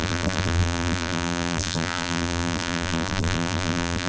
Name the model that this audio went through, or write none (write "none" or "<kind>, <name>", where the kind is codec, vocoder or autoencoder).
vocoder, BigVGAN v2